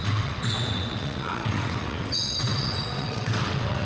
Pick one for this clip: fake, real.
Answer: fake